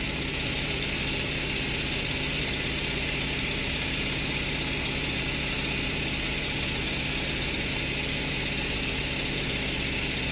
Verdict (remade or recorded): recorded